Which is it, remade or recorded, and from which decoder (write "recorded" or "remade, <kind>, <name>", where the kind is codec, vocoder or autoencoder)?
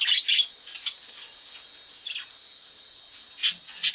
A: recorded